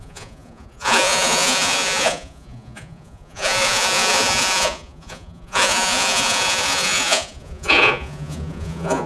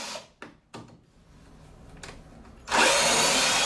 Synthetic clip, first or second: first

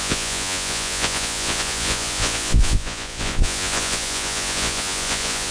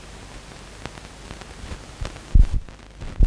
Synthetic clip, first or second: first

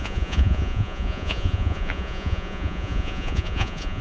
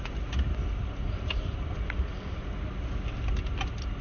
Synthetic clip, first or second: first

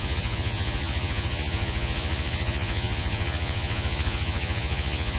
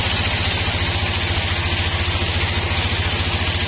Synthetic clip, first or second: first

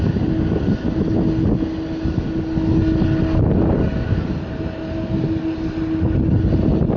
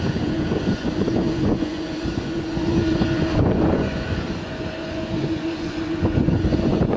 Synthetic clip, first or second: second